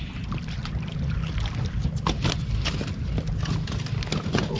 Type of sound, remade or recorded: recorded